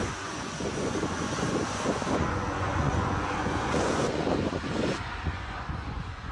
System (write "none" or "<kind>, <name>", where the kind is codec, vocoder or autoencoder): vocoder, Vocos